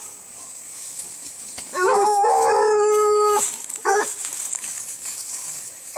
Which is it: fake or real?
fake